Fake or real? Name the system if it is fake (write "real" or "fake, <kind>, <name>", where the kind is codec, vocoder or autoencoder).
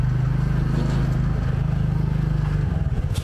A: real